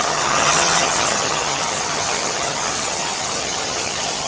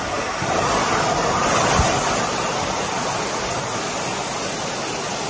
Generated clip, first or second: first